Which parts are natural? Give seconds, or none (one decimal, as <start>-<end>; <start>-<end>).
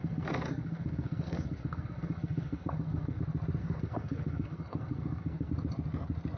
3.2-3.6; 5.5-6.4